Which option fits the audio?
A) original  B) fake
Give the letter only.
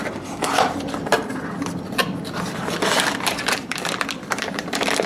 B